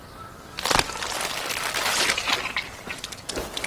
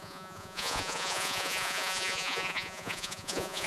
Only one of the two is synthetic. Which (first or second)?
second